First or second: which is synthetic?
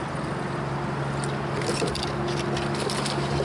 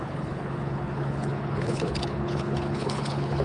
second